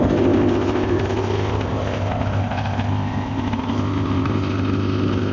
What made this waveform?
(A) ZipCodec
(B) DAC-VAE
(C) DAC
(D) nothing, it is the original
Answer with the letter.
A